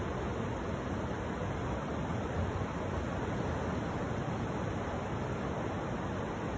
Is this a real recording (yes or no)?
yes